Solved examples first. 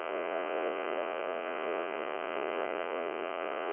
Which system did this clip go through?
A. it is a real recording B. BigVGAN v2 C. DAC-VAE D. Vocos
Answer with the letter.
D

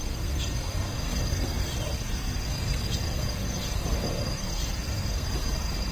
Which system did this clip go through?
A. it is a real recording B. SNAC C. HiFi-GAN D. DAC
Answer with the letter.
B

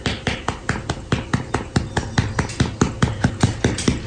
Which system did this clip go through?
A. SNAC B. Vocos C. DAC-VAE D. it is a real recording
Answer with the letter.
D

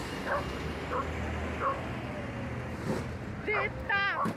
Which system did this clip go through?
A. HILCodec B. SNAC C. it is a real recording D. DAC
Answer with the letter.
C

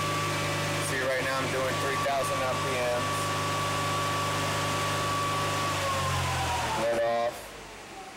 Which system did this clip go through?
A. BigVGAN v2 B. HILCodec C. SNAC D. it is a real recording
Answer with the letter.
D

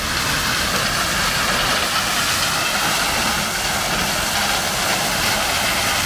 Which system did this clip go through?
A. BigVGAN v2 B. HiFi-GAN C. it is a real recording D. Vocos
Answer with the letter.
C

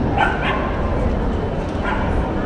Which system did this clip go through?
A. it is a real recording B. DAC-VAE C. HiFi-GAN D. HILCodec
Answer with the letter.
A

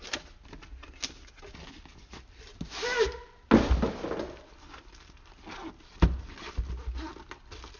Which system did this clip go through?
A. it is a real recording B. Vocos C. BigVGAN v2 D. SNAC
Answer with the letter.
A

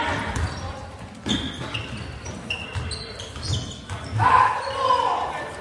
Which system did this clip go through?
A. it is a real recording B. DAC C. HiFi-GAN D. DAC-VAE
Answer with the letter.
A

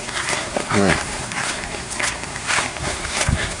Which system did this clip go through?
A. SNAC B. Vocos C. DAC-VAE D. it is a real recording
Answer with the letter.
A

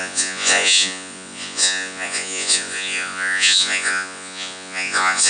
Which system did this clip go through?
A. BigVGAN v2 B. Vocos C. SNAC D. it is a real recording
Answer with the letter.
B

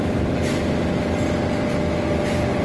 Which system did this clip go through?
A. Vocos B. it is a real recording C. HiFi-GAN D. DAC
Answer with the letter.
B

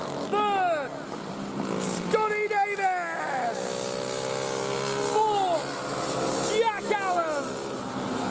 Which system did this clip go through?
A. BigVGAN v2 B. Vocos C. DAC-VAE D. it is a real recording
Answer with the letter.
D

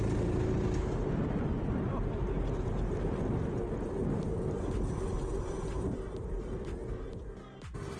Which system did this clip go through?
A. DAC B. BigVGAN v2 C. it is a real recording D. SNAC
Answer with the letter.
C